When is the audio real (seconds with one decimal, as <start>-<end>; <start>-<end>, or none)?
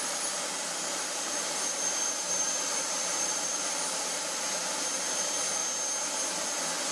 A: 5.6-6.9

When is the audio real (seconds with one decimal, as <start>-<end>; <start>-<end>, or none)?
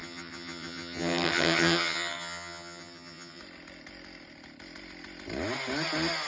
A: 3.4-6.3